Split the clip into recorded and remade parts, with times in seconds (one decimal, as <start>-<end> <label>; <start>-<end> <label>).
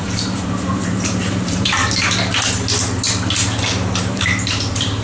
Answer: 0.0-1.8 remade; 1.8-4.0 recorded; 4.0-5.0 remade